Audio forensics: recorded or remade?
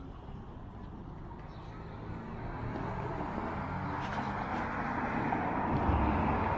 recorded